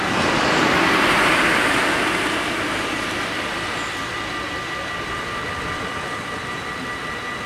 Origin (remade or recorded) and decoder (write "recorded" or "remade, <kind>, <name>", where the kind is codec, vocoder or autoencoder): remade, vocoder, BigVGAN v2